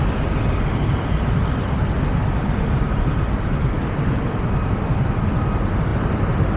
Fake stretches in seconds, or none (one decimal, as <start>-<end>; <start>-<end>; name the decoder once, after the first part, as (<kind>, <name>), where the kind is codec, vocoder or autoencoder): 5.9-6.6 (vocoder, BigVGAN v2)